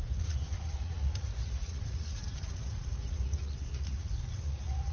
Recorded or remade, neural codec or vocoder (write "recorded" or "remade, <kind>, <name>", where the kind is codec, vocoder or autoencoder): remade, vocoder, Vocos